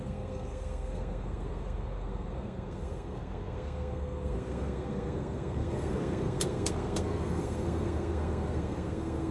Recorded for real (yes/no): no